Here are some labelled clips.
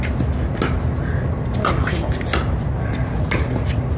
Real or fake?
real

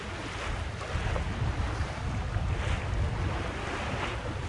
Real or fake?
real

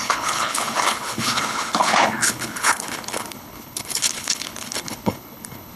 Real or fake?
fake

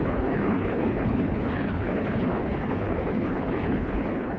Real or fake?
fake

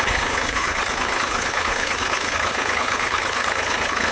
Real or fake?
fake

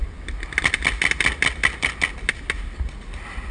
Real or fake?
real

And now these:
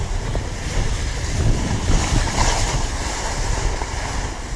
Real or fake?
real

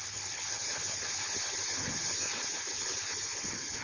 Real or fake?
fake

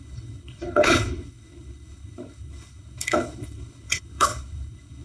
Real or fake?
fake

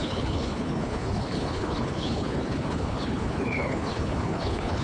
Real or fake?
fake